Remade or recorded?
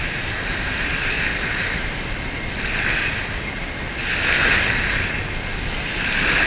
recorded